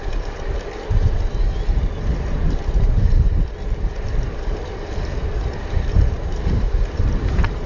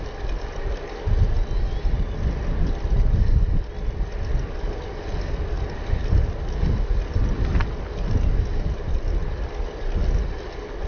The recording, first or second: second